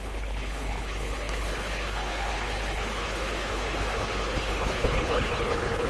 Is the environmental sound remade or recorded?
remade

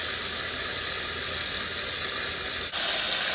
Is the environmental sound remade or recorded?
recorded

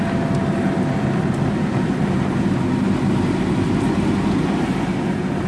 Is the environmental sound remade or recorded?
recorded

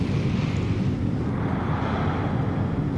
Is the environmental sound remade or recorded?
recorded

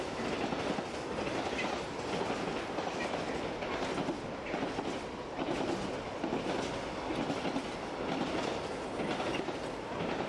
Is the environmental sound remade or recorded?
recorded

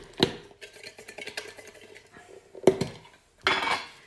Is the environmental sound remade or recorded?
recorded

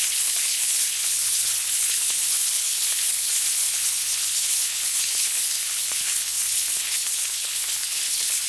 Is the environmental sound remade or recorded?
remade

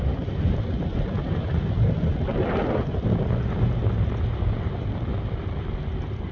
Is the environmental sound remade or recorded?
recorded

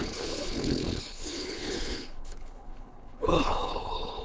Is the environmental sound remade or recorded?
remade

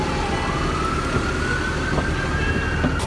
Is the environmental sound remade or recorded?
recorded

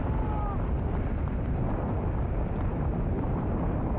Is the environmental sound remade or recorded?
recorded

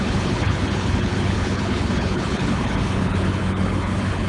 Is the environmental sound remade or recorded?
remade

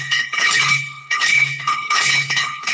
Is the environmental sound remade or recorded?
remade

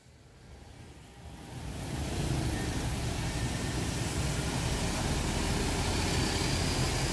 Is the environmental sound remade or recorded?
recorded